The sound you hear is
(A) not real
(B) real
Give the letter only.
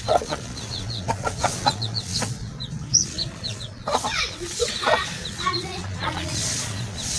A